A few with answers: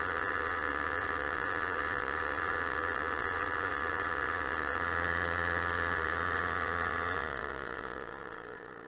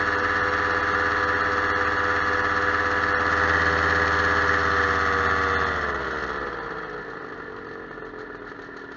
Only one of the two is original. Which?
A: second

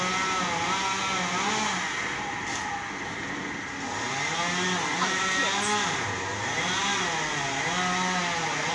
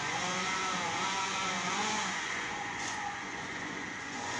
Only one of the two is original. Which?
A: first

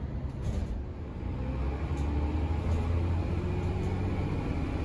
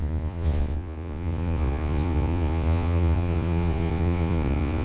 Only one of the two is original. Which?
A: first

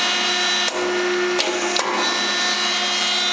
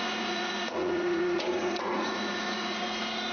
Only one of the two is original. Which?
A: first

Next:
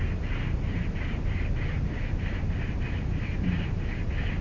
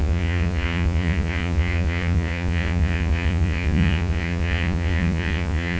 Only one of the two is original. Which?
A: first